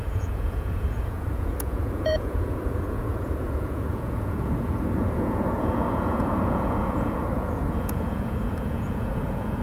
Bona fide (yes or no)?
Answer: no